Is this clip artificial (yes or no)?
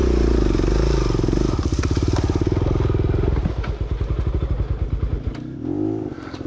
no